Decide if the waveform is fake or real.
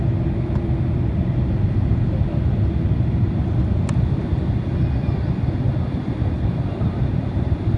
real